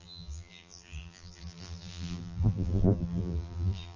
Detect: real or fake fake